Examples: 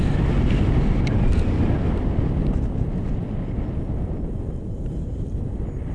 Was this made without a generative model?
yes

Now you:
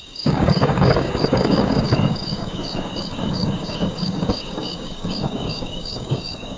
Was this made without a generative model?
no